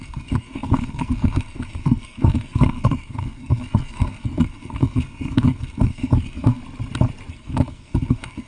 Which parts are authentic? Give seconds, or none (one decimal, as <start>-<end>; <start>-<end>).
6.6-7.3